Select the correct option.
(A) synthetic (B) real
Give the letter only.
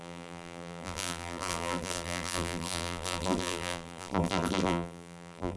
A